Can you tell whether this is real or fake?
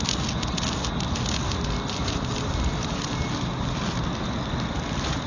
real